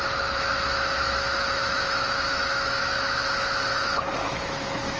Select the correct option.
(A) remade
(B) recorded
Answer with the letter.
A